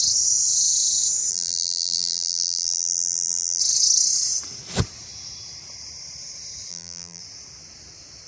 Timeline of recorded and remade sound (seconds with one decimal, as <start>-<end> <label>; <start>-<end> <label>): 0.0-1.3 recorded; 1.3-3.6 remade; 3.6-6.7 recorded; 6.7-7.2 remade; 7.2-8.3 recorded